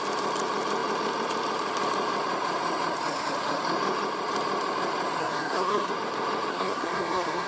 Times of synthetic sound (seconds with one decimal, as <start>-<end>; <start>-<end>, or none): 5.2-5.9; 6.5-7.5